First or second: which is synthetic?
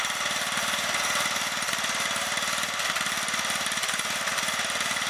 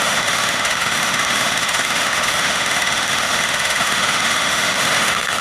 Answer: second